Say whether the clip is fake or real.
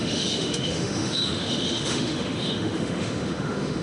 fake